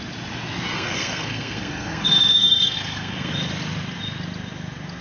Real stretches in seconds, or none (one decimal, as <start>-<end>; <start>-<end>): 0.0-0.7; 3.3-5.0